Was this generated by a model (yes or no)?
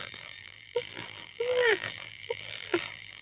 yes